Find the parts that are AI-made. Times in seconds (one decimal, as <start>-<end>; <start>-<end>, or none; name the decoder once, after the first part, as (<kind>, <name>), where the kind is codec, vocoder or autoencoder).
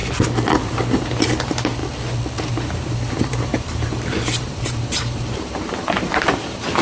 0.7-1.8 (vocoder, BigVGAN v2); 2.5-6.8